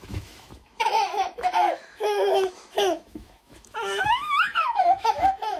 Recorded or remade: remade